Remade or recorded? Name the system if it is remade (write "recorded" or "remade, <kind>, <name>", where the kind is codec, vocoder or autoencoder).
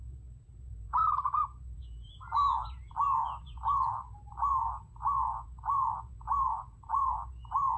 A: remade, vocoder, Vocos